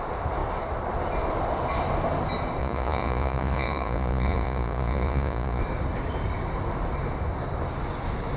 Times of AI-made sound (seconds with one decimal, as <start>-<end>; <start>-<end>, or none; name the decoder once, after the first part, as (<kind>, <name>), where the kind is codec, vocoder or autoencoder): 2.6-5.6 (vocoder, Vocos)